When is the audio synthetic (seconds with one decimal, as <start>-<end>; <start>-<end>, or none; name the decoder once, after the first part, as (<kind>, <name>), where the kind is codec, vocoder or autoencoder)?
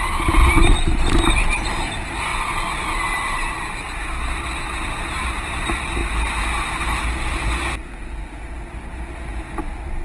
none